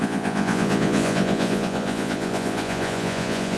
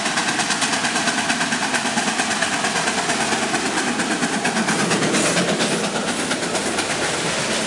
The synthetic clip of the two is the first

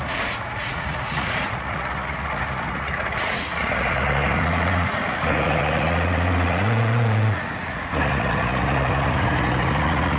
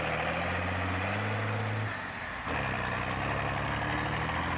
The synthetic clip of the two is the first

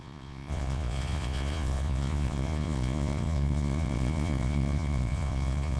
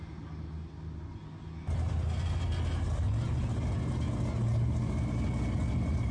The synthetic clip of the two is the first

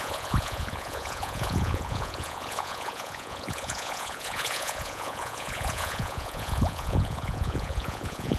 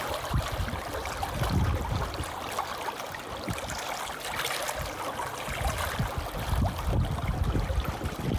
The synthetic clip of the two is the first